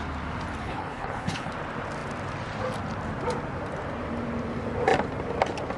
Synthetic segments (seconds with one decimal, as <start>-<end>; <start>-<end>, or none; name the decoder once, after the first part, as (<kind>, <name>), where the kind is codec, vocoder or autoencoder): 0.6-1.5 (codec, HILCodec)